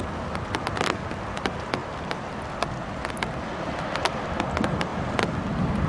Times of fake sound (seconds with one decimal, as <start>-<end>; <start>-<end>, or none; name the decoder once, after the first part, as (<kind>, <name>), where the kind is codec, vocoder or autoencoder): none